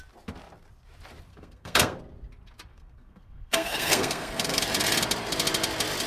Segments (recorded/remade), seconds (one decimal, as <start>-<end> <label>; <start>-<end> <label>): 0.0-1.3 recorded; 1.3-2.0 remade; 2.0-2.7 recorded; 2.7-4.6 remade; 4.6-6.1 recorded